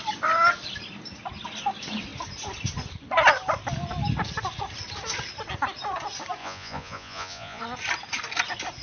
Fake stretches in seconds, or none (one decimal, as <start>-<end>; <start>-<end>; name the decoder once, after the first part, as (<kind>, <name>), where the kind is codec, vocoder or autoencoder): 6.4-7.6 (vocoder, Vocos)